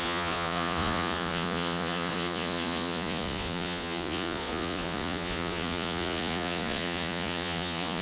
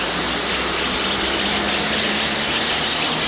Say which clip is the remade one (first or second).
first